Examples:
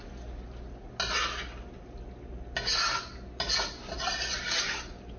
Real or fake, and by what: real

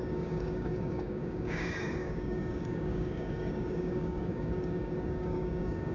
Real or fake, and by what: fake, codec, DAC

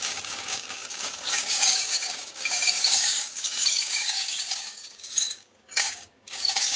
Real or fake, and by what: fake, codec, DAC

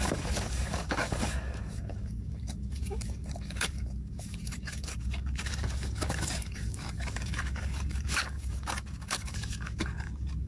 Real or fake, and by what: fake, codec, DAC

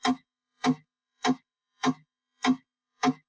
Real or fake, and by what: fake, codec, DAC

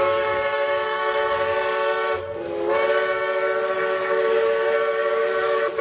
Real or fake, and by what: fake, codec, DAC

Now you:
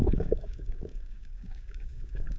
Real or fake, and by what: fake, codec, DAC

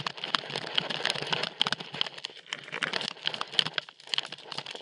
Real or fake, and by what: real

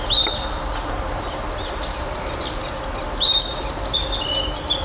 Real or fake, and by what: real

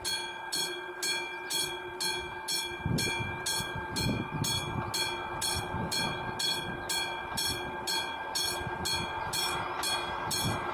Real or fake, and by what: real